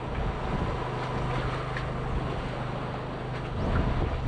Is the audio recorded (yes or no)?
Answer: yes